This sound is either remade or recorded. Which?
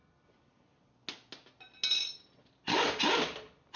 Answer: recorded